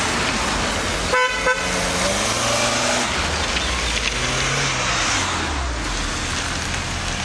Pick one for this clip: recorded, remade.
recorded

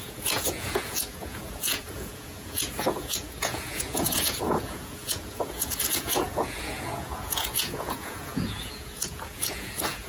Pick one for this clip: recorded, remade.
remade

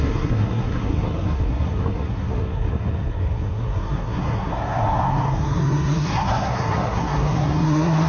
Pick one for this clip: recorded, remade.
remade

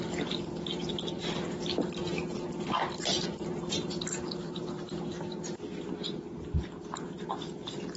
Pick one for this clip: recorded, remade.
recorded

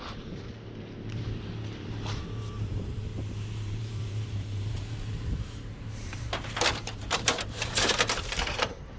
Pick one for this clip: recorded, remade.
remade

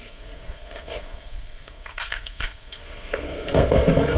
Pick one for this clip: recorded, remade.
remade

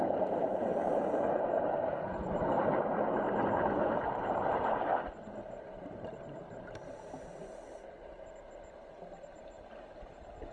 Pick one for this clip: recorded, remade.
recorded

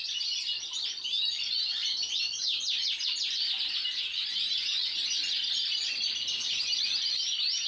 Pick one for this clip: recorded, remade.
recorded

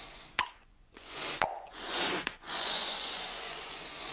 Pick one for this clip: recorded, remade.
remade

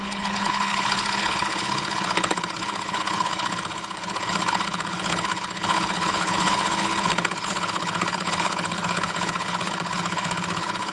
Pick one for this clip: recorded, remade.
remade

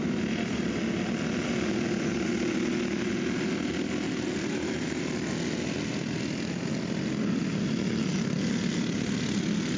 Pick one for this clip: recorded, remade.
recorded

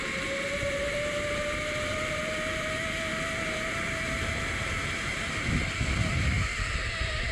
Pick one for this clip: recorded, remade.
remade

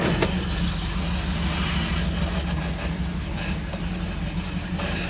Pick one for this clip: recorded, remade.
recorded